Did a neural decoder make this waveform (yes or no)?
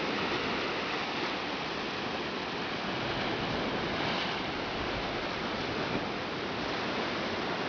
no